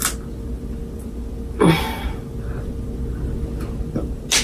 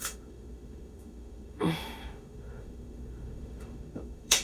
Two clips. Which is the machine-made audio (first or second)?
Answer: second